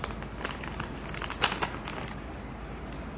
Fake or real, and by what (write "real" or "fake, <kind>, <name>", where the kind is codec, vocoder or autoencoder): real